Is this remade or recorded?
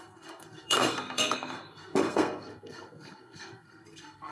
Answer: remade